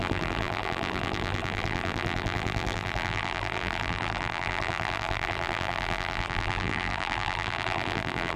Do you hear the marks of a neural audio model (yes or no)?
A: yes